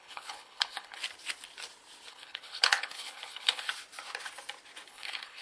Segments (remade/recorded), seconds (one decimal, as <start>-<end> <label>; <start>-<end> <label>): 0.0-1.0 remade; 1.0-2.1 recorded; 2.1-3.7 remade; 3.7-4.9 recorded; 4.9-5.4 remade